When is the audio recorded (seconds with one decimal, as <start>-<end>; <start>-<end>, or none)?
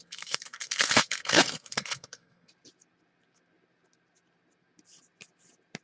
2.5-5.8